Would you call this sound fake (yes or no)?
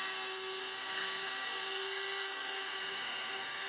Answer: yes